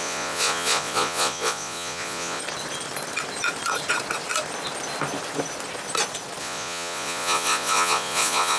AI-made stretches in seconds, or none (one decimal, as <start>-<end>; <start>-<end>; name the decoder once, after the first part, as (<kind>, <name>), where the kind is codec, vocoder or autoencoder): 0.0-2.4 (vocoder, Vocos); 6.4-8.6